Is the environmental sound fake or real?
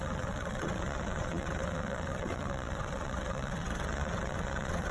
fake